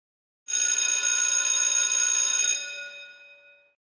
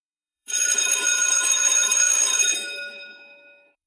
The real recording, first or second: first